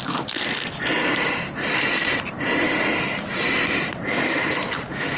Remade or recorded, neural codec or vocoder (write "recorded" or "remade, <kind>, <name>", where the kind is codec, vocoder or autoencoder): recorded